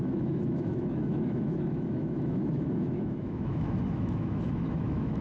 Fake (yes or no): yes